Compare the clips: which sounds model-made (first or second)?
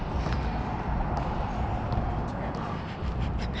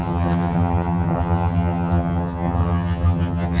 second